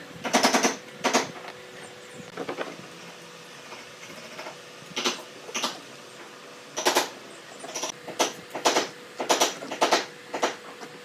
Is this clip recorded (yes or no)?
yes